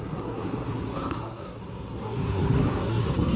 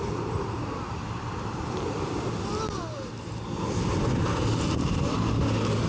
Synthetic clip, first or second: first